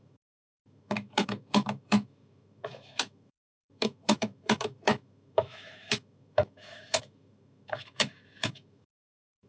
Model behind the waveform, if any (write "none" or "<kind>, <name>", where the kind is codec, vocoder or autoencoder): autoencoder, DAC-VAE